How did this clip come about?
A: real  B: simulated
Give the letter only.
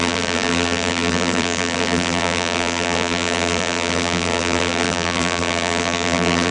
B